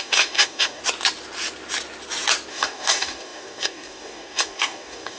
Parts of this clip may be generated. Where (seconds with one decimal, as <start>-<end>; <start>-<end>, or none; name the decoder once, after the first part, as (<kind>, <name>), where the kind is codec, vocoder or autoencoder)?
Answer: 0.0-0.8 (codec, DAC); 2.5-5.2